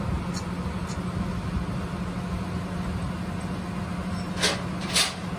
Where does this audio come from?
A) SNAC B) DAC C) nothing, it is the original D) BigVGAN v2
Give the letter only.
C